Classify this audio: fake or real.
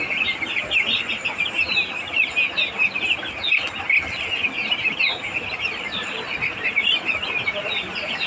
real